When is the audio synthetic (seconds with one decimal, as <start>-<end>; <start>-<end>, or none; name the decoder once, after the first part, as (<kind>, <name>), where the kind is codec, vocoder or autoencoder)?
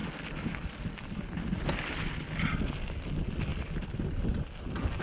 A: none